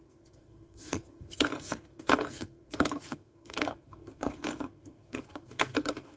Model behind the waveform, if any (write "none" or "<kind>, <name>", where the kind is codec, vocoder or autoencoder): codec, SNAC